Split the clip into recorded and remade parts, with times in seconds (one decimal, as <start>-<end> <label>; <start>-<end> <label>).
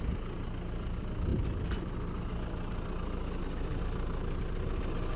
0.0-5.2 recorded